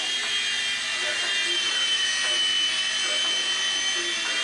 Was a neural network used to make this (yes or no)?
no